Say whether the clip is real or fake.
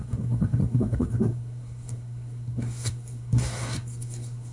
fake